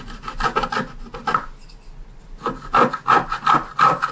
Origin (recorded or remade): recorded